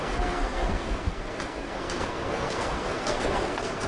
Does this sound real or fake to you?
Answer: fake